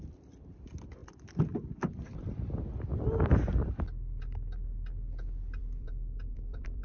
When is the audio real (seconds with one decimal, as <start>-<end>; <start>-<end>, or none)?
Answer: 0.0-5.6